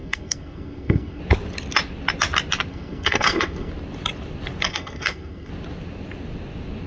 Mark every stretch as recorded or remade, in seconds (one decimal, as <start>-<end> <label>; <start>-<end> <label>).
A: 0.0-1.2 remade; 1.2-2.7 recorded; 2.7-3.7 remade; 3.7-4.7 recorded; 4.7-5.5 remade; 5.5-6.9 recorded